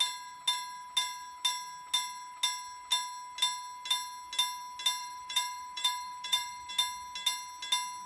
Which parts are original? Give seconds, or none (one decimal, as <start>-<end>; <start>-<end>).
0.0-5.0; 6.7-8.1